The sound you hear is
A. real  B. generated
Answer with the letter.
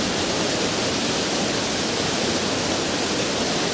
A